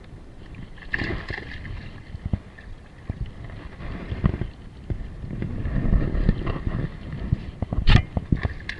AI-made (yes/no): no